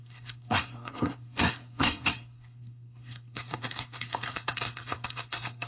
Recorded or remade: remade